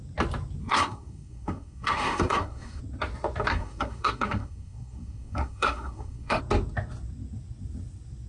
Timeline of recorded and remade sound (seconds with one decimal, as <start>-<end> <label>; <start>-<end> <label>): 0.0-0.6 recorded; 0.6-2.8 remade; 2.8-3.5 recorded; 3.5-6.4 remade; 6.4-8.3 recorded